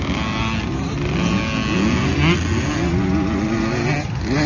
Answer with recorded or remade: recorded